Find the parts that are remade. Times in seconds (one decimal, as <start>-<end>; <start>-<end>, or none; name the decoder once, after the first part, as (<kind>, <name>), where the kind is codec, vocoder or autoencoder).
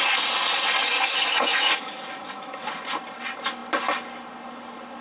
0.8-2.6 (autoencoder, DAC-VAE)